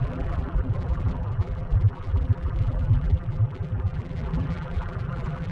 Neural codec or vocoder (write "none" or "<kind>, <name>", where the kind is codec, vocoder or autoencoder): vocoder, BigVGAN v2